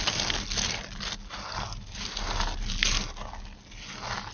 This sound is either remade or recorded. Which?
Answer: recorded